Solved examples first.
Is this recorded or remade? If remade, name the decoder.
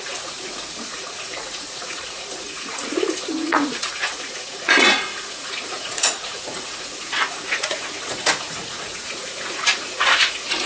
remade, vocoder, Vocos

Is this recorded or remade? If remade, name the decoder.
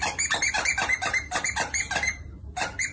recorded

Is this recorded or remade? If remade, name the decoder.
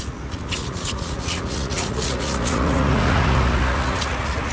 remade, vocoder, Vocos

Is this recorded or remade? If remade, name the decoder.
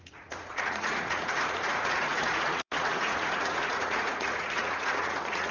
remade, vocoder, Vocos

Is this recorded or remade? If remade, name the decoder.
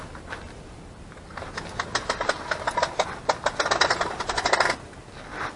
recorded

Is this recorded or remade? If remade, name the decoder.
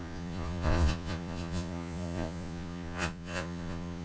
remade, vocoder, Vocos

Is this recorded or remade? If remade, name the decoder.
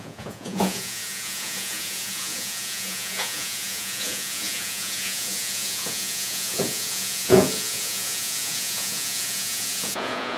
remade, vocoder, Vocos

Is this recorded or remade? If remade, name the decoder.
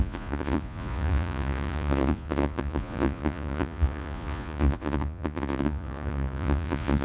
remade, vocoder, Vocos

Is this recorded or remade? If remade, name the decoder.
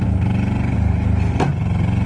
recorded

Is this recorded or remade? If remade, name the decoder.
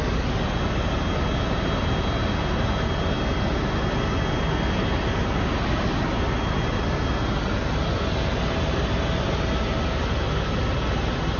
recorded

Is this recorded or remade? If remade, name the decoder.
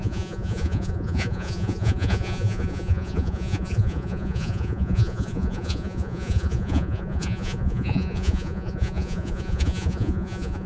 remade, vocoder, Vocos